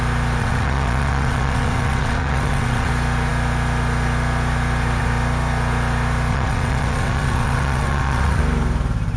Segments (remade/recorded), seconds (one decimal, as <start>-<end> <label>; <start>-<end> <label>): 0.0-0.4 recorded; 0.4-2.9 remade; 2.9-6.3 recorded; 6.3-8.4 remade; 8.4-9.2 recorded